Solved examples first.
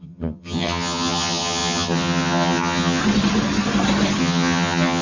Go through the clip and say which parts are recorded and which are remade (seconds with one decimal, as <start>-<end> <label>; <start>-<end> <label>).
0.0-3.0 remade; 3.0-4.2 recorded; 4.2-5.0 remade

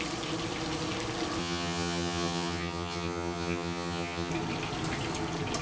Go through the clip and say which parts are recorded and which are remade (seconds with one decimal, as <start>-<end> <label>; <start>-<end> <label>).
0.0-1.4 recorded; 1.4-4.3 remade; 4.3-5.6 recorded

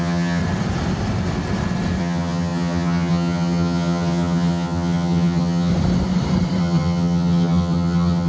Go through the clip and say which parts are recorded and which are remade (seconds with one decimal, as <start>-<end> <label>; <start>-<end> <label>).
0.0-0.4 remade; 0.4-2.0 recorded; 2.0-5.7 remade; 5.7-6.6 recorded; 6.6-8.3 remade

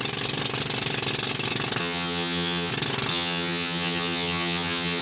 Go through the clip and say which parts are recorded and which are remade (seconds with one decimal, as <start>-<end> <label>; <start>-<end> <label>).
0.0-1.8 recorded; 1.8-2.7 remade; 2.7-3.1 recorded; 3.1-5.0 remade

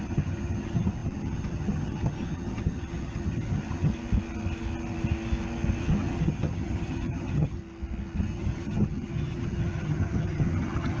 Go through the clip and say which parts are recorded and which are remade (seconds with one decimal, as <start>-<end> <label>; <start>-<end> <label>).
0.0-3.9 remade; 3.9-5.8 recorded; 5.8-7.6 remade; 7.6-8.2 recorded; 8.2-11.0 remade

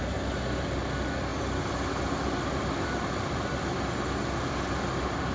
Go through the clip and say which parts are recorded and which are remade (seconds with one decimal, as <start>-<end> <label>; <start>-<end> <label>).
0.0-5.3 recorded

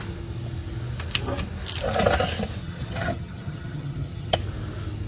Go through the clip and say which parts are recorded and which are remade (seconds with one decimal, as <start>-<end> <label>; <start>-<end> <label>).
0.0-2.6 recorded; 2.6-4.4 remade; 4.4-5.1 recorded

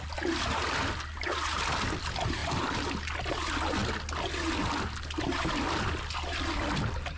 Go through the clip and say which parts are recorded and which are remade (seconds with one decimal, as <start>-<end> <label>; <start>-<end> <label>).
0.0-7.2 recorded